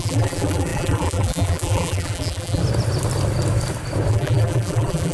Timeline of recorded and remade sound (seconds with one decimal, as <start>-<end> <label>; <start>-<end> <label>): 0.0-2.6 remade; 2.6-4.1 recorded; 4.1-5.1 remade